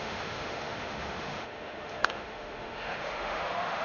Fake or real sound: fake